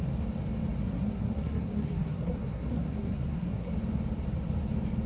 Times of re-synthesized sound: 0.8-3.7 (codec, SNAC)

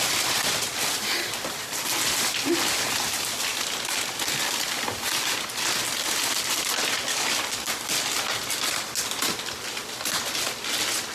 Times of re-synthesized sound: 7.1-7.7 (codec, DAC)

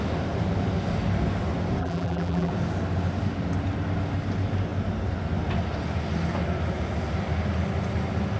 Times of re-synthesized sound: 1.8-2.5 (vocoder, BigVGAN v2)

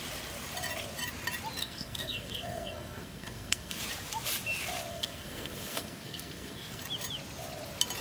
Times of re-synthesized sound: 1.6-3.8 (codec, SNAC); 4.9-6.8

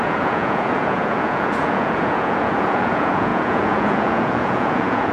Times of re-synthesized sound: 0.0-5.1 (vocoder, Vocos)